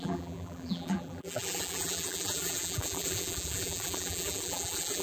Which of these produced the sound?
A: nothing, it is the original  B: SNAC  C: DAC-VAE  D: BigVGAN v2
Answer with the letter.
D